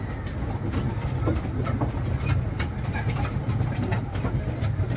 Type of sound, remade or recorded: recorded